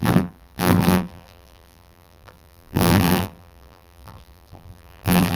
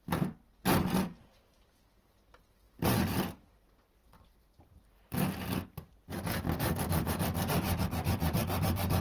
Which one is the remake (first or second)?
first